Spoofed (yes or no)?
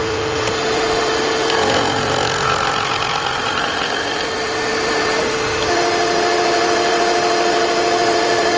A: no